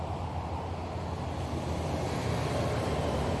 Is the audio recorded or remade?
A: recorded